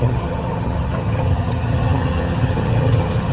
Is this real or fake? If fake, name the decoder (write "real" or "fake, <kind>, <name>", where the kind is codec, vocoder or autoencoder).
fake, vocoder, HiFi-GAN